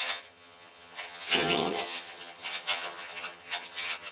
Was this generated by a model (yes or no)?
yes